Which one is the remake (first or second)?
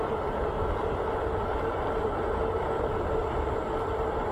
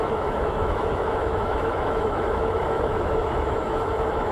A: second